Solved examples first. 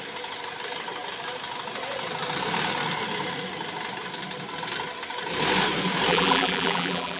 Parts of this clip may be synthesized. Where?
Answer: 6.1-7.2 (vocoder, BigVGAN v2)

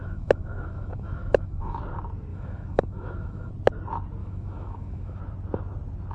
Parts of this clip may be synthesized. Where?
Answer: 0.0-1.8 (autoencoder, DAC-VAE); 2.3-3.5; 4.2-5.2

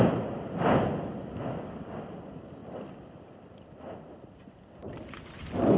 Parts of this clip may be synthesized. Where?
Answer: 2.6-4.3 (vocoder, BigVGAN v2); 4.8-5.8

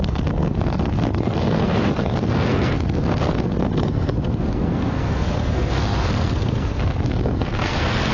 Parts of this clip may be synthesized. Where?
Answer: 0.0-8.1 (codec, SNAC)

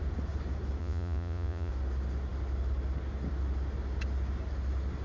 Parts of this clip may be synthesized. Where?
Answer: 0.8-1.7 (vocoder, Vocos)

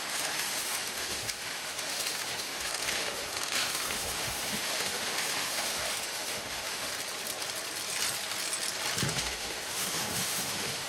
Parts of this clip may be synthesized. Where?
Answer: 0.0-6.9 (autoencoder, DAC-VAE); 9.1-10.9

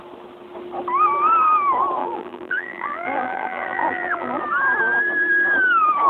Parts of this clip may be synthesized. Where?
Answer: 2.0-4.4 (vocoder, BigVGAN v2)